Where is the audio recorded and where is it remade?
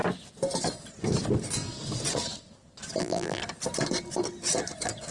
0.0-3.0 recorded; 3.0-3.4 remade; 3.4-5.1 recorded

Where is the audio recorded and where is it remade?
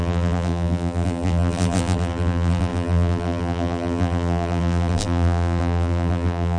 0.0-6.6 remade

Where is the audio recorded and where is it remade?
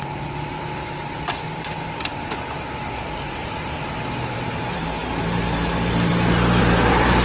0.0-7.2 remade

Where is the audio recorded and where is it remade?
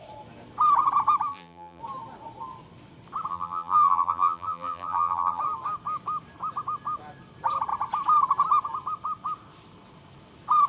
0.0-1.3 recorded; 1.3-1.8 remade; 1.8-3.3 recorded; 3.3-5.4 remade; 5.4-10.7 recorded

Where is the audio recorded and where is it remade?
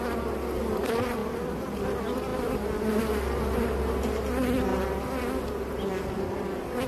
0.0-1.2 recorded; 1.2-1.8 remade; 1.8-2.3 recorded; 2.3-3.0 remade; 3.0-6.9 recorded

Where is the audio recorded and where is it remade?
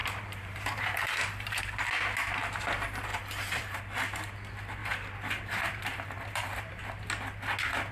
0.0-1.6 remade; 1.6-3.1 recorded; 3.1-3.8 remade; 3.8-4.8 recorded; 4.8-6.8 remade; 6.8-7.9 recorded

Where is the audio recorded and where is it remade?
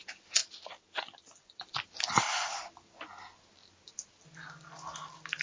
0.0-5.4 recorded